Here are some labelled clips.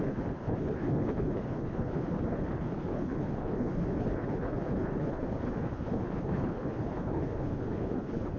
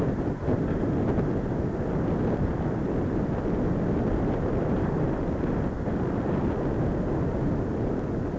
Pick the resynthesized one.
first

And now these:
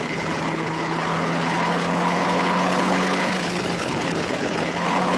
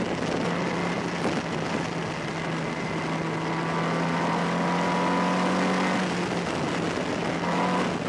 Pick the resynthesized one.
first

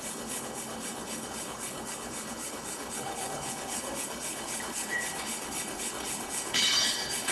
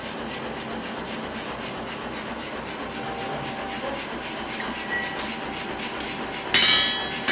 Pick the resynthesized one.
first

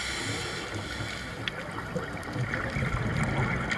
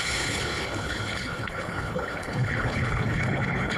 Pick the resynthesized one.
second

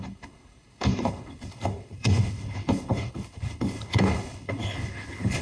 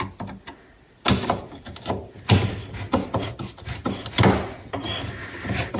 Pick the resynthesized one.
first